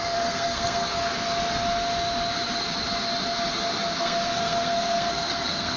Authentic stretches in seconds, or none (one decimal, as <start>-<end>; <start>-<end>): 1.1-4.0

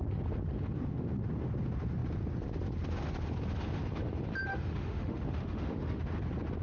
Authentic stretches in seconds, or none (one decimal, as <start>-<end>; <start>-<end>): 0.0-4.5; 6.0-6.6

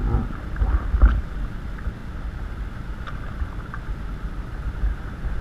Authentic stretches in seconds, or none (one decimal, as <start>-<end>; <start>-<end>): 0.0-2.0; 3.1-5.4